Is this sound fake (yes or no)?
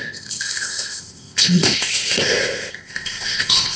yes